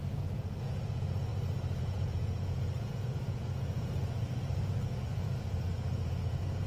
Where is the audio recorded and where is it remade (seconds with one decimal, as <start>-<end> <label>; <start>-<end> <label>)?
0.0-1.3 remade; 1.3-1.8 recorded; 1.8-6.7 remade